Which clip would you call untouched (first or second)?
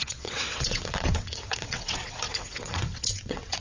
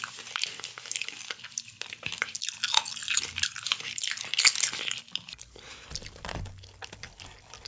second